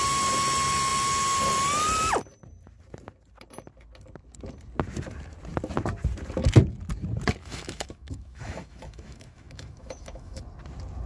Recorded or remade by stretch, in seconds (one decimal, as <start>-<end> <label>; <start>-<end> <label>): 0.0-7.4 recorded; 7.4-10.4 remade; 10.4-11.1 recorded